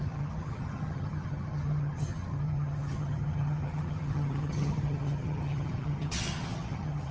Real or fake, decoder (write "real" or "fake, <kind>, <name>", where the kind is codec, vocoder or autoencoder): fake, vocoder, HiFi-GAN